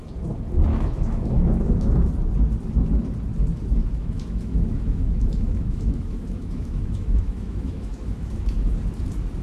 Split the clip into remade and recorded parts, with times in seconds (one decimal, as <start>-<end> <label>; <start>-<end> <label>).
0.0-0.7 recorded; 0.7-2.1 remade; 2.1-4.0 recorded; 4.0-8.7 remade; 8.7-9.4 recorded